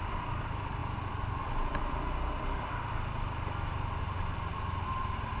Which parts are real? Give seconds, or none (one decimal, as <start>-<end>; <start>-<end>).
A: none